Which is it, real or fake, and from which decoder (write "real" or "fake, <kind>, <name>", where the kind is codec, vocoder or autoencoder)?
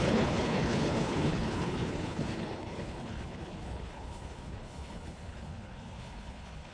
fake, codec, HILCodec